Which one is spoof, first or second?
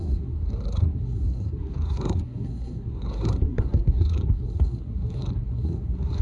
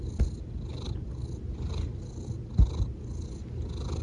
first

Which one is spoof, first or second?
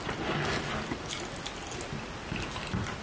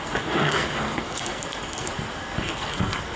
second